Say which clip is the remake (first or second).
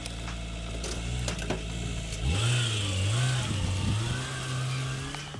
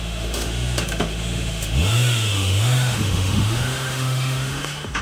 second